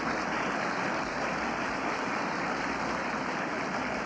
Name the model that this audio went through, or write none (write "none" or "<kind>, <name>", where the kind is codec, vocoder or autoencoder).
none